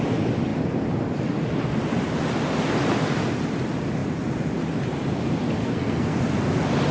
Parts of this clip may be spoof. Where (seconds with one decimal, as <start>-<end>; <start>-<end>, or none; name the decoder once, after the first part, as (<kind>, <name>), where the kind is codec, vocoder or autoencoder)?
5.6-6.2 (codec, SNAC)